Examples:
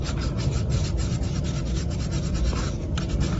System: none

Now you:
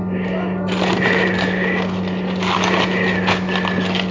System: none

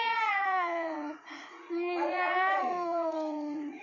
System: vocoder, Vocos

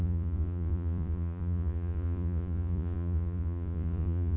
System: vocoder, Vocos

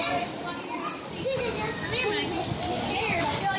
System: none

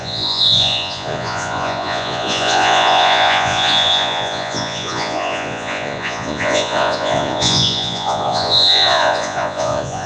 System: vocoder, Vocos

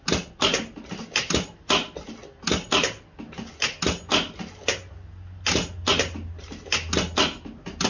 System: none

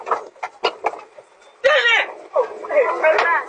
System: none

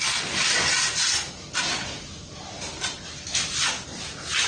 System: none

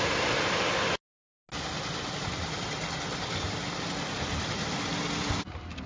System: none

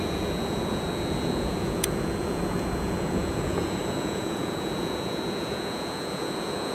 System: vocoder, Vocos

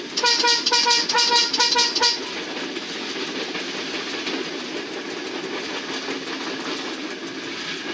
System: none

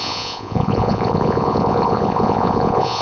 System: vocoder, Vocos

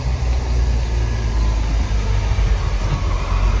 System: none